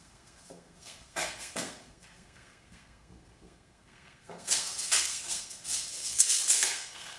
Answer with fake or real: fake